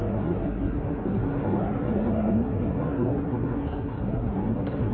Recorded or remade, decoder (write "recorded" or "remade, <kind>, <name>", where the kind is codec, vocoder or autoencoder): remade, codec, SNAC